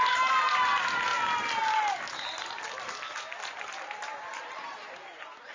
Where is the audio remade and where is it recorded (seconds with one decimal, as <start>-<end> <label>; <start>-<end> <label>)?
0.0-1.1 remade; 1.1-4.4 recorded; 4.4-5.5 remade